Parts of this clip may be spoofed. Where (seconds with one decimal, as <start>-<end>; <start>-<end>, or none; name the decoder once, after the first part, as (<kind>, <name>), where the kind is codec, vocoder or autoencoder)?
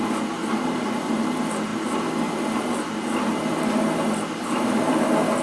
0.4-1.2 (vocoder, BigVGAN v2)